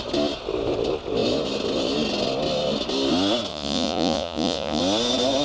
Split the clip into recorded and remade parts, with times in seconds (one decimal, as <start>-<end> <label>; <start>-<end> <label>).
0.0-3.5 recorded; 3.5-4.8 remade; 4.8-5.4 recorded